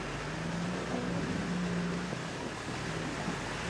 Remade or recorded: recorded